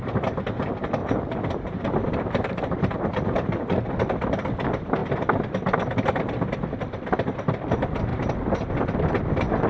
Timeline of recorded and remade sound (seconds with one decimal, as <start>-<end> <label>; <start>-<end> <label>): 0.0-1.0 recorded; 1.0-4.0 remade; 4.0-9.7 recorded